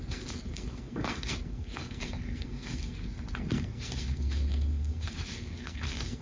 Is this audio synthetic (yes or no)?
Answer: yes